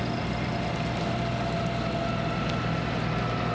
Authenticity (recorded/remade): recorded